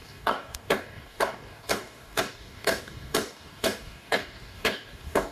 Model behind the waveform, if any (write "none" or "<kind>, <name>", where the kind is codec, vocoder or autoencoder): codec, DAC